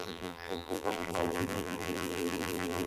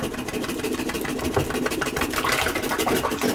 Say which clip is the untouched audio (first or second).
second